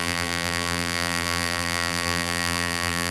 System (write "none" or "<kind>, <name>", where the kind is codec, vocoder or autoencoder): vocoder, BigVGAN v2